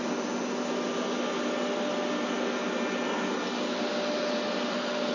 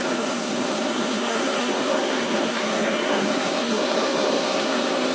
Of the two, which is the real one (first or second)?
first